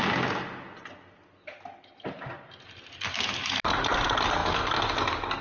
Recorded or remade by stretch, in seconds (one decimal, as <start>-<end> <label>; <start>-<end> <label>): 0.0-3.2 recorded; 3.2-4.4 remade; 4.4-5.4 recorded